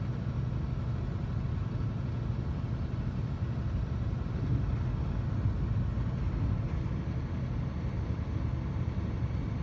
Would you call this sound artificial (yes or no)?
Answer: no